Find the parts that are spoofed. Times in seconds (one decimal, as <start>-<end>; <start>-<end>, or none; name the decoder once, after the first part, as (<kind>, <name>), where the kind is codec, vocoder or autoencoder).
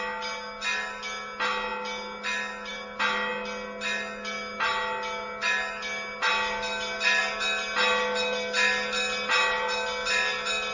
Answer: none